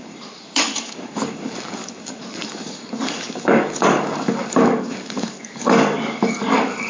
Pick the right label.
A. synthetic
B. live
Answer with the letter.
A